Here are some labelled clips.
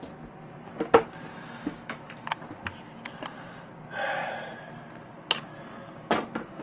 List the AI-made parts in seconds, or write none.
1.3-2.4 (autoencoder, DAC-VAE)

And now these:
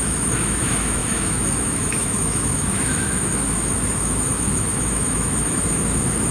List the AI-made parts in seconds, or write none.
0.0-6.3 (autoencoder, DAC-VAE)